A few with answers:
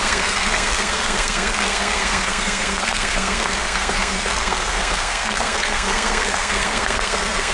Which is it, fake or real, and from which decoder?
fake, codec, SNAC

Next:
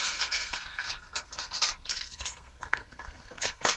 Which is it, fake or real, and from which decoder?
fake, codec, SNAC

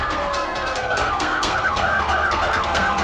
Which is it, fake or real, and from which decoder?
fake, codec, SNAC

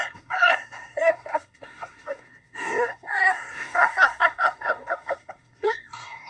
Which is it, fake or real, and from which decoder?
fake, codec, SNAC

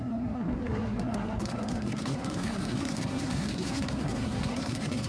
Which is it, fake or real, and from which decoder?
fake, codec, SNAC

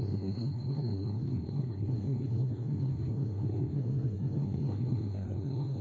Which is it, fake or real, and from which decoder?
fake, codec, SNAC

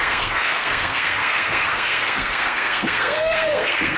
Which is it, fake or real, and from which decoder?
fake, codec, SNAC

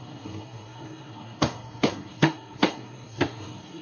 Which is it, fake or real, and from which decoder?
fake, codec, SNAC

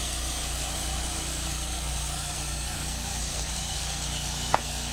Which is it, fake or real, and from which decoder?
fake, codec, SNAC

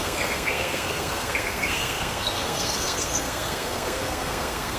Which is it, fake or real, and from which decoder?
fake, codec, SNAC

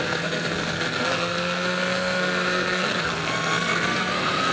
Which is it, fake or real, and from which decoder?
fake, codec, SNAC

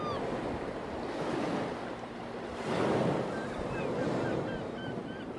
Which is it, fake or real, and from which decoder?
real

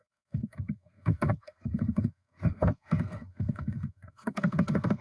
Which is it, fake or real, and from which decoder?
fake, codec, SNAC